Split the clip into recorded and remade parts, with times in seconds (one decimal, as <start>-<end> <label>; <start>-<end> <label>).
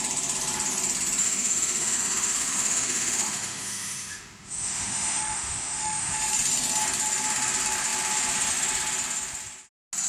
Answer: 0.0-1.2 recorded; 1.2-6.3 remade; 6.3-10.1 recorded